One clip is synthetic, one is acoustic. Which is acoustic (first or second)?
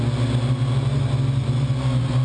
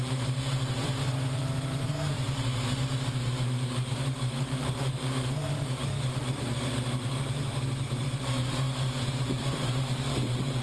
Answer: first